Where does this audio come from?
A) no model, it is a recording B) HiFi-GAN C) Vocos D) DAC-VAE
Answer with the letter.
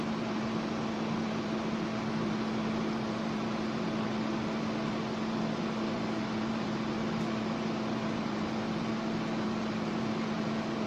A